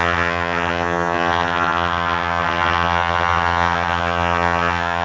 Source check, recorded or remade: remade